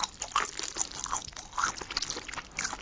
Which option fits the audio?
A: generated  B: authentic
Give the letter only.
B